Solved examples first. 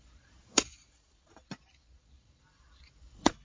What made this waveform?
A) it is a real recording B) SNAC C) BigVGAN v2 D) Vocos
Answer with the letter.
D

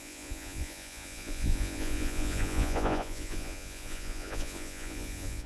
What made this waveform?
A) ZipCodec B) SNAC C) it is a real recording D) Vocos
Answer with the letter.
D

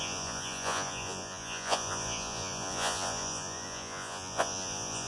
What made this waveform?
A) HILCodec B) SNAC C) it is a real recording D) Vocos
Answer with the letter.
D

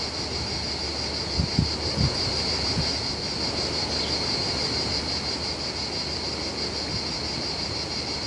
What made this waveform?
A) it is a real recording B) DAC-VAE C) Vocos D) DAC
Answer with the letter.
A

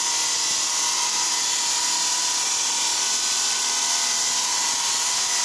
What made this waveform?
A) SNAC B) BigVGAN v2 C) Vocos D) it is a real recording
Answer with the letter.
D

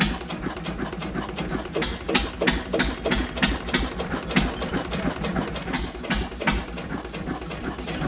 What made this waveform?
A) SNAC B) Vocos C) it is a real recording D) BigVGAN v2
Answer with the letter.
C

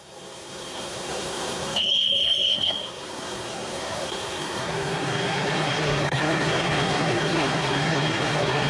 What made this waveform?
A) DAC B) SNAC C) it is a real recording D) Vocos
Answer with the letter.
B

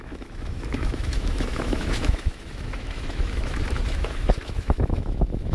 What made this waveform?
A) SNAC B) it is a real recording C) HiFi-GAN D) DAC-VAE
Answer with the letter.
D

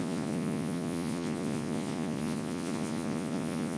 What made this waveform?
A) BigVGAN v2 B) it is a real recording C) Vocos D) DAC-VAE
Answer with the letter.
C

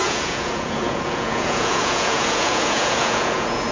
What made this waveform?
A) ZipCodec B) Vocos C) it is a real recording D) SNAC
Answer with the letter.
B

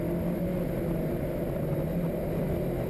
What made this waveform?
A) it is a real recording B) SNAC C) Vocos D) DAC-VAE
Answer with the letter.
A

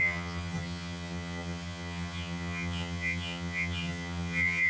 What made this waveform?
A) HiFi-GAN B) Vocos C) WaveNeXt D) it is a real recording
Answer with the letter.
A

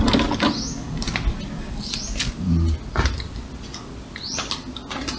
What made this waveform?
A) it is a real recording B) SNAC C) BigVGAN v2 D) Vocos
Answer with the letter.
A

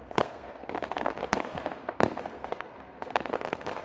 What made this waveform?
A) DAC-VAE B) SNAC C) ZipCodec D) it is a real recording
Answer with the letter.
B